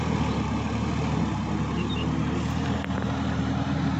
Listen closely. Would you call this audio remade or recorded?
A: recorded